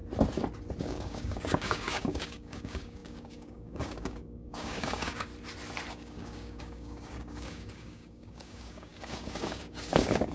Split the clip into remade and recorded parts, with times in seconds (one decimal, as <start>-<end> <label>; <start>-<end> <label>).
0.0-0.8 recorded; 0.8-5.3 remade; 5.3-5.9 recorded; 5.9-10.3 remade